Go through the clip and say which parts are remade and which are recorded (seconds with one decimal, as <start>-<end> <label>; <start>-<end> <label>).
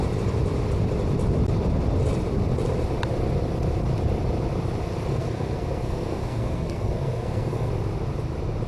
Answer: 0.0-5.1 recorded; 5.1-7.7 remade; 7.7-8.7 recorded